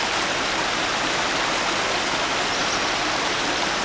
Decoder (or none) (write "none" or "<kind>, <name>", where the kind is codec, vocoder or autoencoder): none